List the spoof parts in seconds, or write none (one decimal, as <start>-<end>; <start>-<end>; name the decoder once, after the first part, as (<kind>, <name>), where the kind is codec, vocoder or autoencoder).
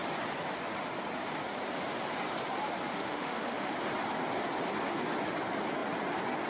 2.9-3.7 (autoencoder, DAC-VAE)